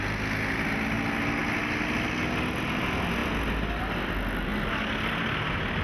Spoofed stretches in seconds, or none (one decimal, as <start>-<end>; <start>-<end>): none